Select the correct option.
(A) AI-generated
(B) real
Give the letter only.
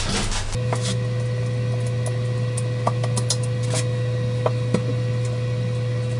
B